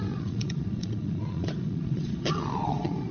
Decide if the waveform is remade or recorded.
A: remade